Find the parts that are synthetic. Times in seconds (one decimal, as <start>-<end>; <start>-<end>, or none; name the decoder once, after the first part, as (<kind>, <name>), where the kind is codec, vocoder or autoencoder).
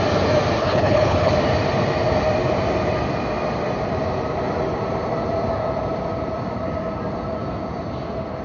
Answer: 0.6-1.3 (codec, HILCodec)